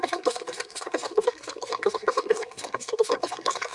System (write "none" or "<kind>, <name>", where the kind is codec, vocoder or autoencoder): codec, SNAC